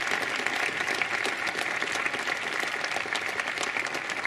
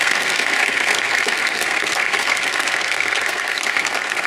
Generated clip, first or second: second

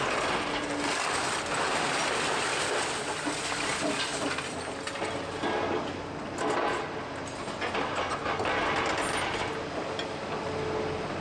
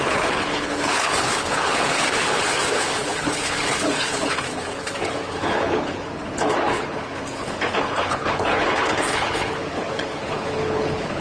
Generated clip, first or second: second